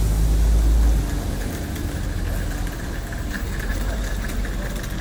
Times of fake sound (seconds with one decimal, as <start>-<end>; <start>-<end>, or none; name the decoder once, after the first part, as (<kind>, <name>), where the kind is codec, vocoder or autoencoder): 3.7-4.4 (vocoder, BigVGAN v2)